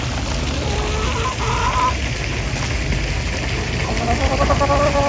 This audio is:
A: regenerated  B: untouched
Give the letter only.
B